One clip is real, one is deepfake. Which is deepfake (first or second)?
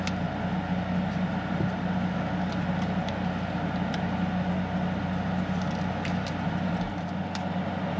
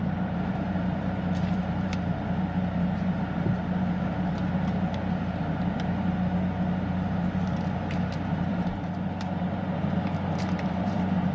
second